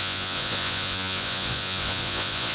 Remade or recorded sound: remade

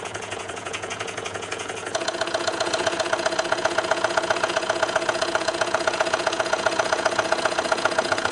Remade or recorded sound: remade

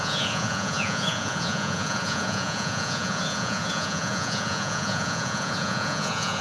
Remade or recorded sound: remade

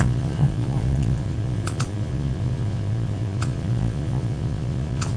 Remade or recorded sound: remade